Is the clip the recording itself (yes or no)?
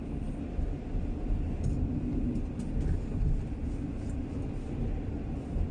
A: yes